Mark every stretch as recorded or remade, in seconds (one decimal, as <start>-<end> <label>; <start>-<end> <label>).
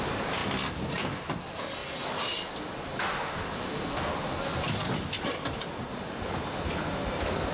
0.0-7.5 recorded